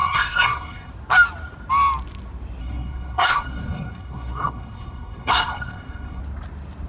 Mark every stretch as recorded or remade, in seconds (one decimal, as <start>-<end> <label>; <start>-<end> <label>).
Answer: 0.0-0.9 remade; 0.9-2.6 recorded; 2.6-6.2 remade; 6.2-6.9 recorded